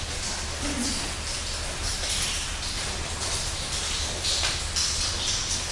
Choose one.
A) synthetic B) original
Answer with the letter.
B